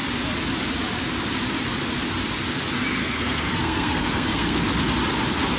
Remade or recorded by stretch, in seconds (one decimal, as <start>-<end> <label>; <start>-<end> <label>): 0.0-3.0 recorded; 3.0-4.6 remade; 4.6-5.6 recorded